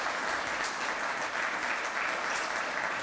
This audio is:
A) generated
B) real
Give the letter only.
B